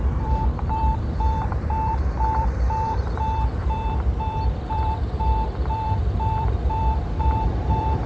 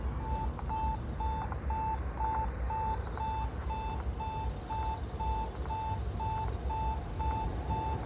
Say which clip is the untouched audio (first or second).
second